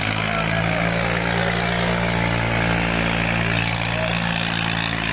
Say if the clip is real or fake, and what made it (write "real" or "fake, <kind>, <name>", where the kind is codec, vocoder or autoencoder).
real